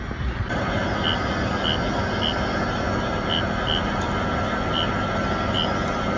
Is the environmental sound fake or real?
real